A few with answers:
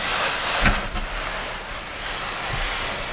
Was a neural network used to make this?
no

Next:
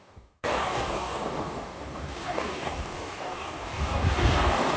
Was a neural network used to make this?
yes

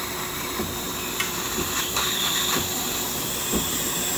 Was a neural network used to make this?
yes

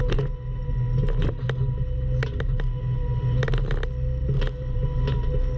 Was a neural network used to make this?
no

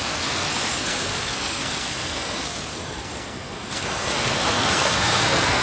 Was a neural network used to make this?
yes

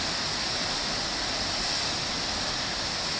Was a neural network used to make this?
no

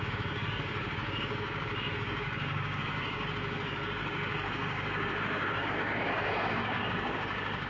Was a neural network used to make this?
yes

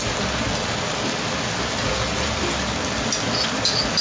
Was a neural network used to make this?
no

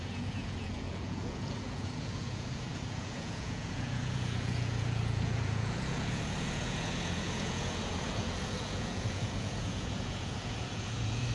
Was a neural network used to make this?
yes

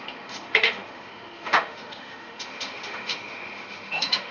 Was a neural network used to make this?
yes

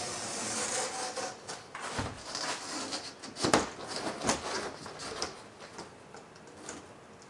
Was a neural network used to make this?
no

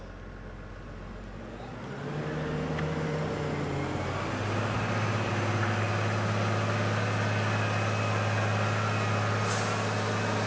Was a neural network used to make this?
no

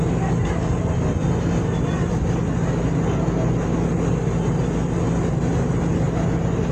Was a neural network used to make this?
no